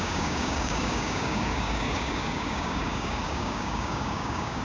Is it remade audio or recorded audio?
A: remade